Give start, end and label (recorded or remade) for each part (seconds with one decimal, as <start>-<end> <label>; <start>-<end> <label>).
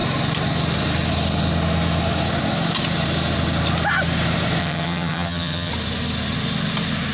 0.0-4.6 recorded; 4.6-5.7 remade; 5.7-7.1 recorded